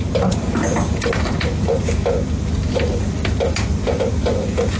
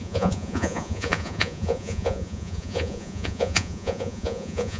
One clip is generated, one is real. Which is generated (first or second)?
second